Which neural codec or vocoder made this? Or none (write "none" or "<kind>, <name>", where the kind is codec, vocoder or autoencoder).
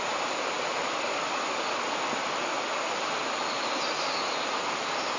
none